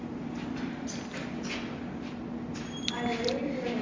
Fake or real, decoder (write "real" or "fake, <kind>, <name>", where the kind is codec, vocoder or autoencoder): real